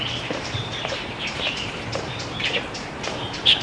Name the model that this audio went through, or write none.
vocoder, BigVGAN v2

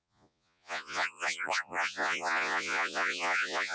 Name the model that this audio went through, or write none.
vocoder, Vocos